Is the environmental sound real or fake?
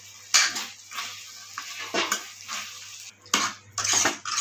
real